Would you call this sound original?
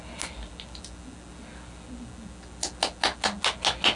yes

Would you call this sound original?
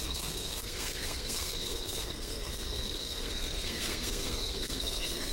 no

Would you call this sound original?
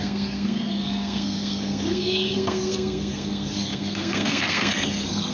no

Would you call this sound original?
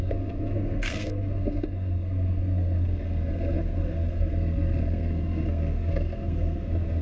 no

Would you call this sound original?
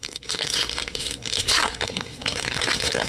no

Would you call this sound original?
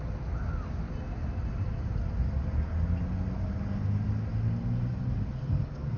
yes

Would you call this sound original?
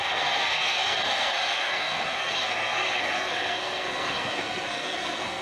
no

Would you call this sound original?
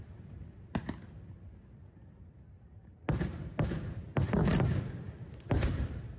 yes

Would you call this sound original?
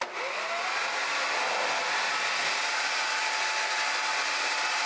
yes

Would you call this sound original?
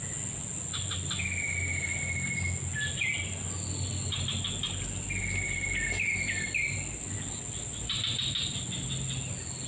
yes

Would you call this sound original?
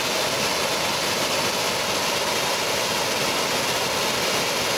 yes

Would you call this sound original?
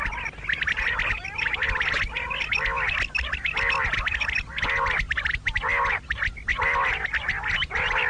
yes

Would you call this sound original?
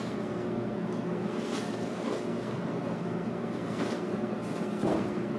no